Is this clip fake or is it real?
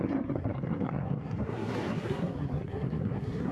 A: fake